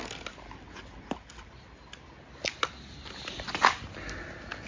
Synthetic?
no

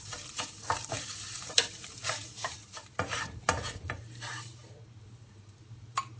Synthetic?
yes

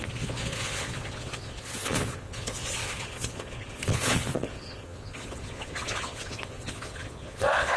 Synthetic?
yes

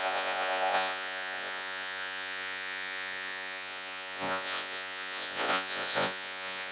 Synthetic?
yes